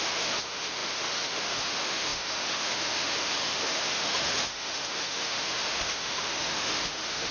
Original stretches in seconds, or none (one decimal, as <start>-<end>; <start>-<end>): none